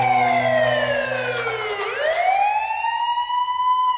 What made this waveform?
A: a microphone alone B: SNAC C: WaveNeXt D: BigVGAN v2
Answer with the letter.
A